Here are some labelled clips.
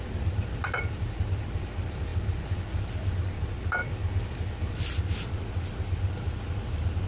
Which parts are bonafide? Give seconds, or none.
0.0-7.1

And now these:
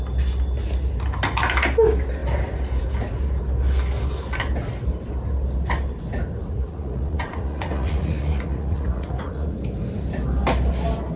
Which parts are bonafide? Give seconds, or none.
0.0-6.4; 9.6-11.2